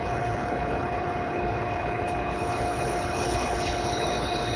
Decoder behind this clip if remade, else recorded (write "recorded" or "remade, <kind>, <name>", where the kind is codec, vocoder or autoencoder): remade, codec, HILCodec